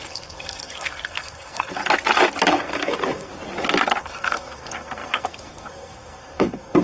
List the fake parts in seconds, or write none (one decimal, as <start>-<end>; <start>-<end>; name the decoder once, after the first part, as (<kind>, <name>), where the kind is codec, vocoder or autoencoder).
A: 0.0-1.8 (codec, SNAC); 2.5-3.3; 4.0-6.8